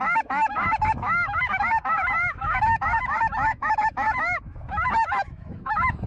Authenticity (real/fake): fake